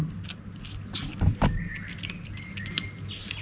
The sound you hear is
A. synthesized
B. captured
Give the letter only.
B